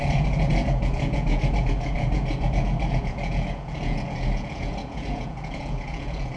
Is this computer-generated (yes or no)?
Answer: yes